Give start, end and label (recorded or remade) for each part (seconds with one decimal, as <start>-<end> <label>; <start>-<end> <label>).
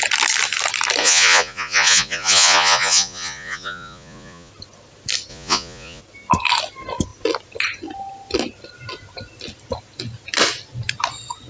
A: 0.0-1.0 recorded; 1.0-4.5 remade; 4.5-5.3 recorded; 5.3-6.0 remade; 6.0-11.5 recorded